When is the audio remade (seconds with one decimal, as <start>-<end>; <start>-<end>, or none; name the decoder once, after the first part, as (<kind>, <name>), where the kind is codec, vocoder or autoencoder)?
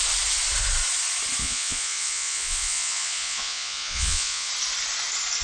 1.4-4.5 (vocoder, Vocos)